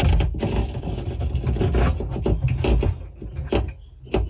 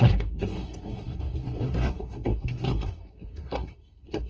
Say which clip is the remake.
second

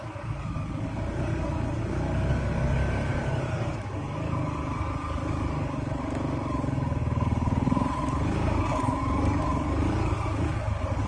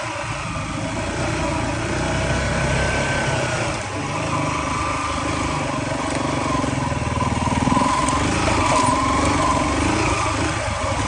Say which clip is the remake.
first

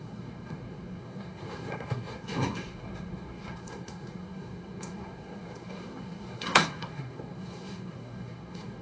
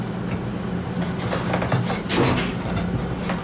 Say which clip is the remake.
first